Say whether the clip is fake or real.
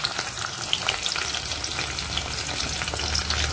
real